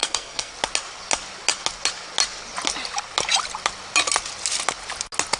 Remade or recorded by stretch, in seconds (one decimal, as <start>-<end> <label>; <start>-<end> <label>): 0.0-0.5 remade; 0.5-5.4 recorded